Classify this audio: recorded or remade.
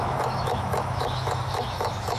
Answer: remade